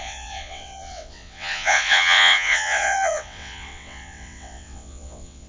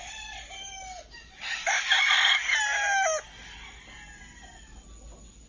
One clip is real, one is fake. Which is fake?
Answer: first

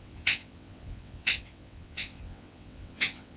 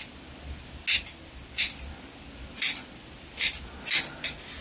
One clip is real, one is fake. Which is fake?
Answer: first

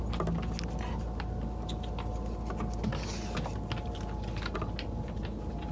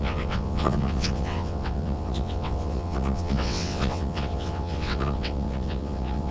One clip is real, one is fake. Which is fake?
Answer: second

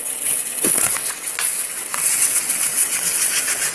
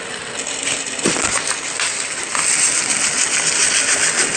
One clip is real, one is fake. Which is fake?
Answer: first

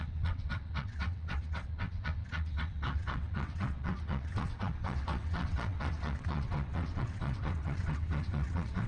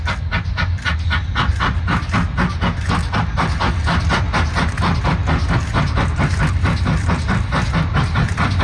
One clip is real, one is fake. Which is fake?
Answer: first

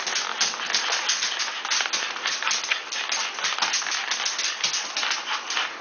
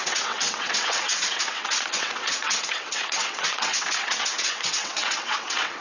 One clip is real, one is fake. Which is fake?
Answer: second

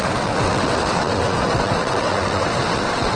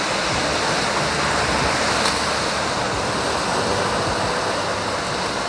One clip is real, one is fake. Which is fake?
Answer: first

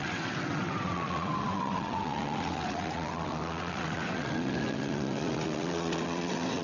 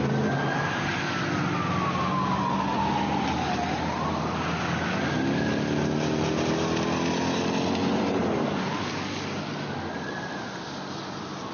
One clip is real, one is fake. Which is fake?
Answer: first